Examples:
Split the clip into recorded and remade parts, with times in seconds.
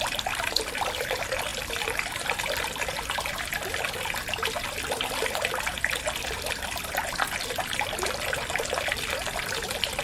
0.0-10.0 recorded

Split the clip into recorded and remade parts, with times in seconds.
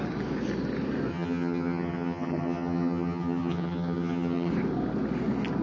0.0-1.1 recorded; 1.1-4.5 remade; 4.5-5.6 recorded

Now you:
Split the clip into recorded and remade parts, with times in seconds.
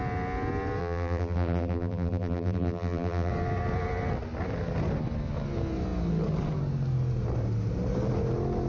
0.0-0.8 recorded; 0.8-3.3 remade; 3.3-8.7 recorded